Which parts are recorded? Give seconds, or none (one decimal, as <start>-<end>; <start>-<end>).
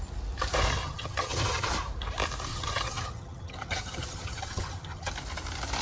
0.0-0.8; 1.7-2.5; 5.1-5.8